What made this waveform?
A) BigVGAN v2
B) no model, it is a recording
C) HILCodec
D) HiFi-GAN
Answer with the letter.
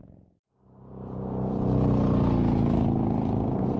B